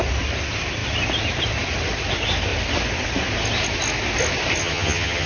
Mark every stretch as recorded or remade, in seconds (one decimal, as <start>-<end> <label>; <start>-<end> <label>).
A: 0.0-4.6 recorded; 4.6-5.3 remade